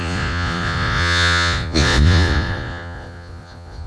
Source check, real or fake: fake